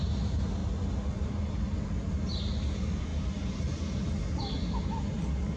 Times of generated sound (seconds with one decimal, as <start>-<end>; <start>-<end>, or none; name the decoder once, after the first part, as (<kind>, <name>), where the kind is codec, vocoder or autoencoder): none